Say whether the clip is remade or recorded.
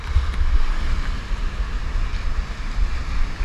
recorded